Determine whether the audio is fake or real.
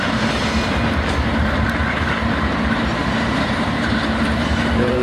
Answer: fake